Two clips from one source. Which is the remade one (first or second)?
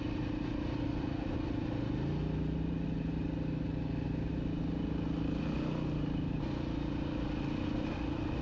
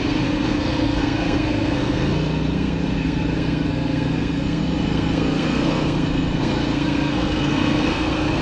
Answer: second